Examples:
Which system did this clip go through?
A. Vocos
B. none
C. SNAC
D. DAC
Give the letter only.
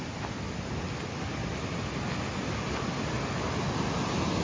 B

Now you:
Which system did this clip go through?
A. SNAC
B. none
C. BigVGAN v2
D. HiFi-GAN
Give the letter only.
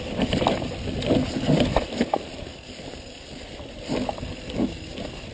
B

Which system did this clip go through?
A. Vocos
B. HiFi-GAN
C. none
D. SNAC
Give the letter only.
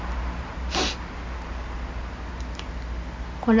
C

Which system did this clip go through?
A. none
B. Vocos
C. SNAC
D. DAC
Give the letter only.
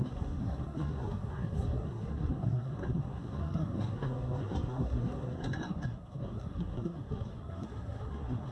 C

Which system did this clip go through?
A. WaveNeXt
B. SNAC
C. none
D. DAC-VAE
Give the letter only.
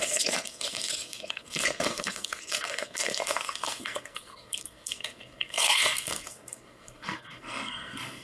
B